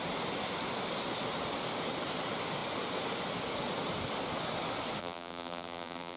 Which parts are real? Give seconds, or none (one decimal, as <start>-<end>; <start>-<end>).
0.0-5.0